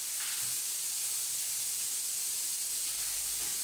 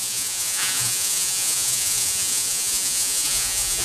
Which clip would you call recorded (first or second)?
first